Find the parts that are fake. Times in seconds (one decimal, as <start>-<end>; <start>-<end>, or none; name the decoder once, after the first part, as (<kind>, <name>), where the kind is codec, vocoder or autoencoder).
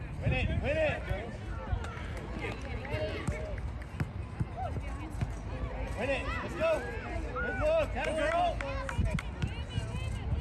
none